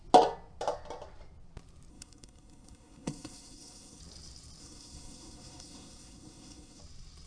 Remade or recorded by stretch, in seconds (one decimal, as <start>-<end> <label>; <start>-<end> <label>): 0.0-1.9 recorded; 1.9-4.0 remade; 4.0-4.6 recorded; 4.6-6.8 remade; 6.8-7.3 recorded